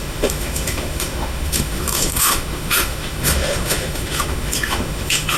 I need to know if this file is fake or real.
fake